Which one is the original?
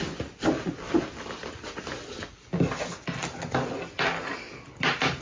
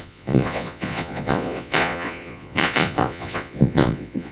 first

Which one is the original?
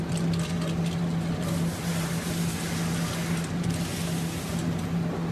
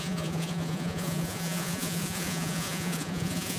first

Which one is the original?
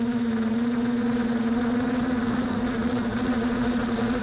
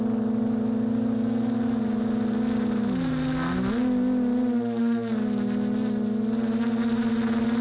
second